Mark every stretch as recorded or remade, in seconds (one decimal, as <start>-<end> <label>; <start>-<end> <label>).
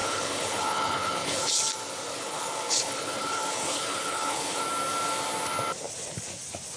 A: 0.0-1.6 remade; 1.6-2.1 recorded; 2.1-4.6 remade; 4.6-6.8 recorded